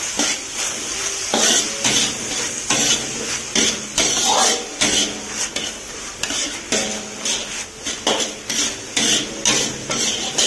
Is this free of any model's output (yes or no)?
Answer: yes